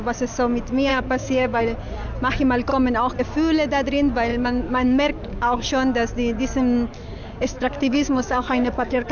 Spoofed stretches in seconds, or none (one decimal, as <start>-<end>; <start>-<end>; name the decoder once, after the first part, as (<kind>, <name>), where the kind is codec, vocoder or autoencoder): 0.9-1.6 (codec, DAC); 4.3-5.7; 6.9-9.1